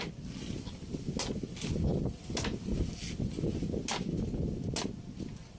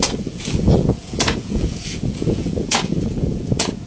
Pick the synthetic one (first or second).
second